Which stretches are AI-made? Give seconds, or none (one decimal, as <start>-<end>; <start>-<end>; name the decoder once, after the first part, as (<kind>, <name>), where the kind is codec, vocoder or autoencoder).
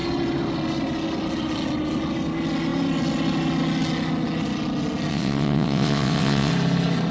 5.1-6.5 (vocoder, WaveNeXt)